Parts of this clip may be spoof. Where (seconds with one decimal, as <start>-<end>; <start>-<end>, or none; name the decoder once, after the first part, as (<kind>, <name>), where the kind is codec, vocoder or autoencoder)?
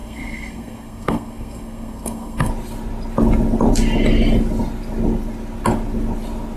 0.0-2.5 (codec, SNAC)